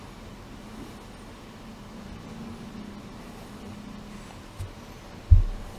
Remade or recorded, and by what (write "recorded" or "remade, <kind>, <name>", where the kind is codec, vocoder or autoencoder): recorded